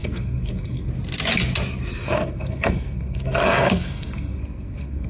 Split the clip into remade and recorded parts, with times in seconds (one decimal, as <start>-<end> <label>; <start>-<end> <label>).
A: 0.0-0.9 remade; 0.9-1.9 recorded; 1.9-5.1 remade